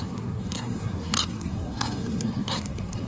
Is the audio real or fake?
fake